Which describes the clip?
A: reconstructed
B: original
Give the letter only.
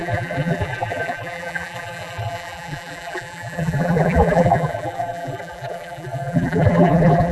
A